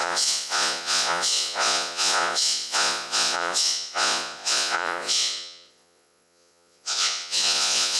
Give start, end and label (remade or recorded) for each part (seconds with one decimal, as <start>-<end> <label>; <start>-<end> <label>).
0.0-8.0 remade